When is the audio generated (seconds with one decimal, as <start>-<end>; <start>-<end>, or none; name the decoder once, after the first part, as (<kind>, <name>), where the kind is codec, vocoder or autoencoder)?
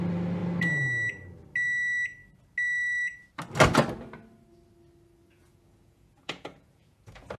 5.2-7.4 (vocoder, Vocos)